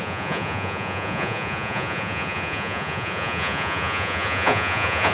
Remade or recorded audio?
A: remade